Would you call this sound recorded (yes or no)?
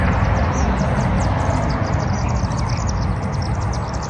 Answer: yes